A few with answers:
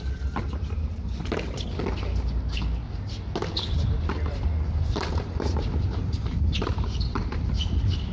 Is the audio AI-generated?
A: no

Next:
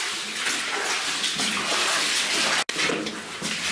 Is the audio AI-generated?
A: no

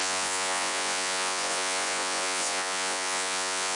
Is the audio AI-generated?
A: yes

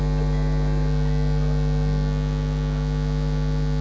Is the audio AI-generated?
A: no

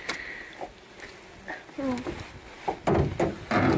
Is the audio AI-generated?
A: no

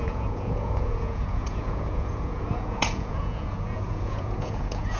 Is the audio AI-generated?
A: yes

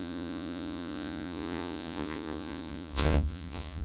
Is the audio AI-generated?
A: yes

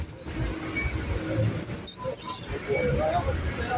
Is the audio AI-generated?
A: no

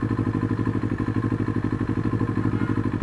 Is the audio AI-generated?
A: no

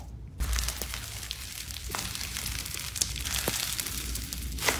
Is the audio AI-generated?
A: yes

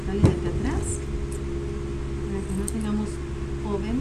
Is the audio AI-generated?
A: no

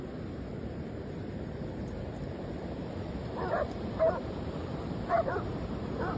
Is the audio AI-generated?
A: yes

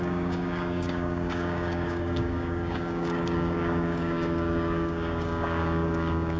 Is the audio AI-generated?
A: yes